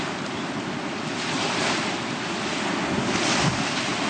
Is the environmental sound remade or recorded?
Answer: recorded